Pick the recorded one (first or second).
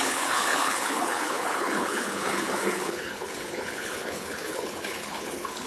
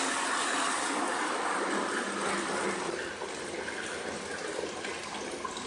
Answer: second